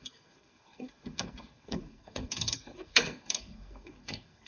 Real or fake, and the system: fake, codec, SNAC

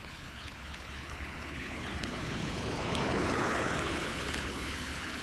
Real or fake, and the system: fake, codec, HILCodec